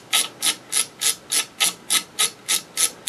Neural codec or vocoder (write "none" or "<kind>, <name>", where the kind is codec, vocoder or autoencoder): none